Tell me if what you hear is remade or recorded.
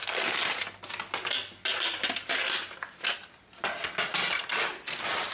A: recorded